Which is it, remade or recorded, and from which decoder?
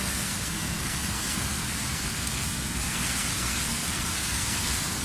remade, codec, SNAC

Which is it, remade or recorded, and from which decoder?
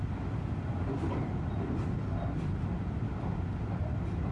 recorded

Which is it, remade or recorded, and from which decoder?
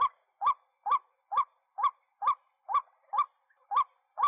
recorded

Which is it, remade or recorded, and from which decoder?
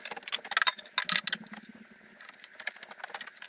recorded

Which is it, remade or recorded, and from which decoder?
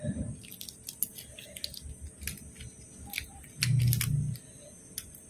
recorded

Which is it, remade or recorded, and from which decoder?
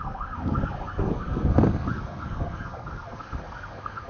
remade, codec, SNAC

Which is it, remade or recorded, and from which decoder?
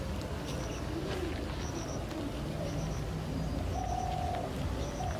recorded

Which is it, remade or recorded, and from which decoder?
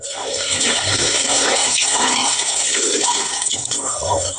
remade, codec, SNAC